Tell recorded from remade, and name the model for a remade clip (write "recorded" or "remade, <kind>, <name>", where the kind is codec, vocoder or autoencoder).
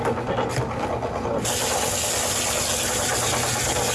recorded